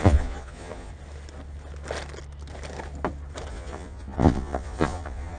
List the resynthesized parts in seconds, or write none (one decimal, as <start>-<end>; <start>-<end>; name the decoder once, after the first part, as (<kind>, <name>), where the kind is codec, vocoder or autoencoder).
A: 0.0-0.9 (vocoder, Vocos); 3.5-5.4